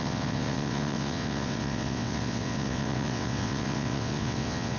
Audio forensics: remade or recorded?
remade